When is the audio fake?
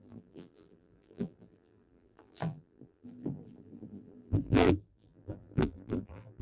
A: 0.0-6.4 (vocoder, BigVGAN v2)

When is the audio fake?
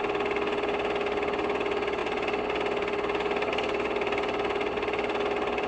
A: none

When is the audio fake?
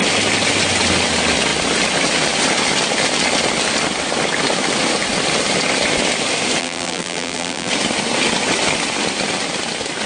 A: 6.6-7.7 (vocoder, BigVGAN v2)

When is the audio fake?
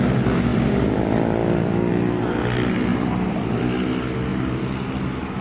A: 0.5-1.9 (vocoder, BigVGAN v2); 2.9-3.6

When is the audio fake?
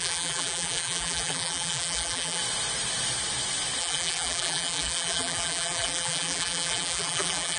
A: 0.0-2.4 (vocoder, BigVGAN v2); 3.8-7.6